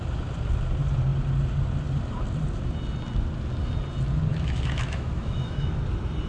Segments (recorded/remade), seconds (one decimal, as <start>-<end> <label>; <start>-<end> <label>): 0.0-4.3 recorded; 4.3-5.8 remade; 5.8-6.3 recorded